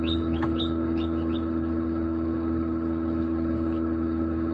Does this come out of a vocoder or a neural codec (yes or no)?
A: yes